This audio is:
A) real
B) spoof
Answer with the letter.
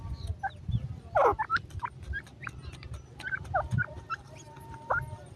A